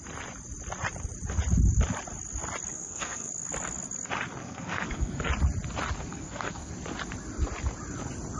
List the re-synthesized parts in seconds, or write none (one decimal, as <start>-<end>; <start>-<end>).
2.7-3.3; 4.4-5.3; 6.1-6.7